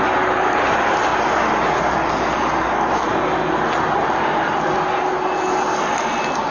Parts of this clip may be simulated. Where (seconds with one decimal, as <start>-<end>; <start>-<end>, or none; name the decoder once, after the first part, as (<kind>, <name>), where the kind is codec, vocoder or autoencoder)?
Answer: none